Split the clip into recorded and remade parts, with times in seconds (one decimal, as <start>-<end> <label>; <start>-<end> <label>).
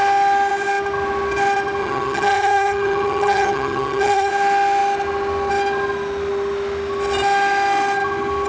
0.0-1.8 recorded; 1.8-4.3 remade; 4.3-8.5 recorded